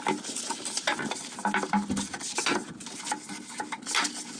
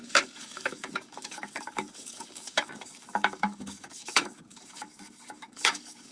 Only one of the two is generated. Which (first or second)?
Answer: second